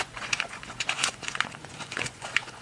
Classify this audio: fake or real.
fake